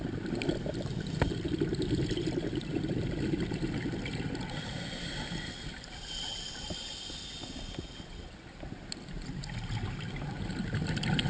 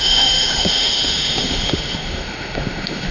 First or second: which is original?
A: first